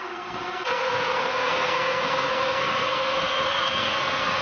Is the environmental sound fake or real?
fake